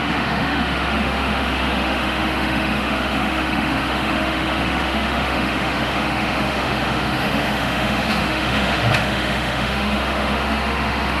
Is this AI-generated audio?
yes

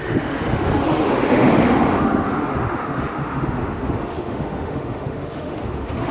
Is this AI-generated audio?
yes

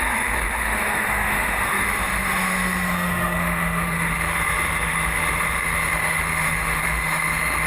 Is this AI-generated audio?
yes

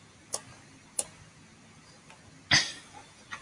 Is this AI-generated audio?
no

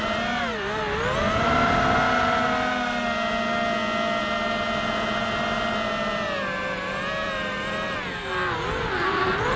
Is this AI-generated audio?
no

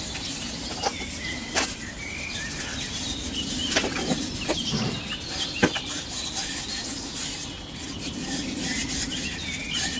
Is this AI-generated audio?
yes